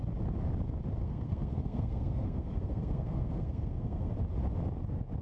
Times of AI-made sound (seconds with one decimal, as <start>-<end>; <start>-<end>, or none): 1.0-4.1